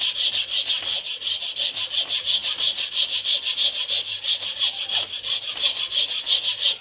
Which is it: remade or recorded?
recorded